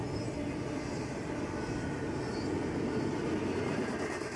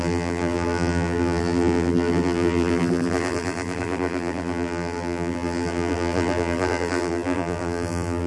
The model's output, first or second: second